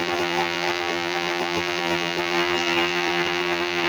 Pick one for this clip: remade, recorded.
remade